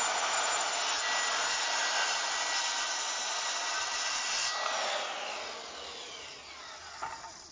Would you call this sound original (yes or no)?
yes